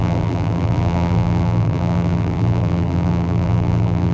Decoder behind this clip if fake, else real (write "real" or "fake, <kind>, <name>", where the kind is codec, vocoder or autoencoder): fake, vocoder, BigVGAN v2